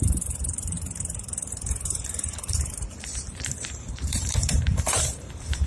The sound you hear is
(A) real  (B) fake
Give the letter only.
B